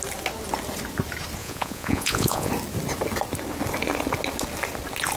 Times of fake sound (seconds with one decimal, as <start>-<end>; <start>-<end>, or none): 1.4-2.5